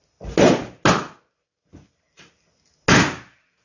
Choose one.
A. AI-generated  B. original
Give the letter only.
B